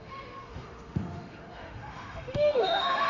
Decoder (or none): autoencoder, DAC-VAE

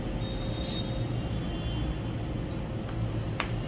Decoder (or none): none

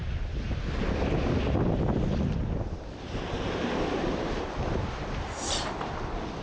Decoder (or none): none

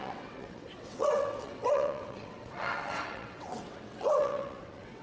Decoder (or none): vocoder, WaveNeXt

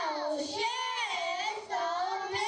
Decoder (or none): none